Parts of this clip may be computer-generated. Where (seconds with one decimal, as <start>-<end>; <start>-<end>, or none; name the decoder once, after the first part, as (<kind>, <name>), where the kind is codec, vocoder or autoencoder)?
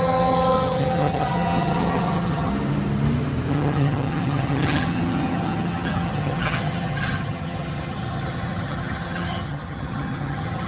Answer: 0.0-2.5 (vocoder, HiFi-GAN); 3.5-10.7